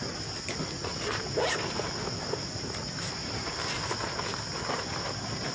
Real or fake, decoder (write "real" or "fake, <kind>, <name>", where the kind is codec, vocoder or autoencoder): real